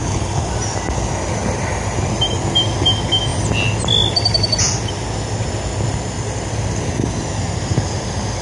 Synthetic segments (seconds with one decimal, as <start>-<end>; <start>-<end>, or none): 0.0-0.5